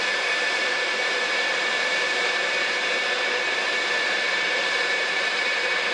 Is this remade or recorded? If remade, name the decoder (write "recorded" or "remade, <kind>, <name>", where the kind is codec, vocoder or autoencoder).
remade, vocoder, BigVGAN v2